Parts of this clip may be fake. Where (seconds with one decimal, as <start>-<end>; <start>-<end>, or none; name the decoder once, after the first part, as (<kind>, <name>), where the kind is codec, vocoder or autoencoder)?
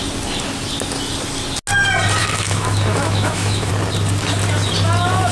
2.2-3.7 (autoencoder, DAC-VAE)